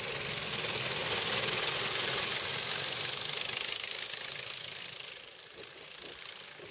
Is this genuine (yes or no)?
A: yes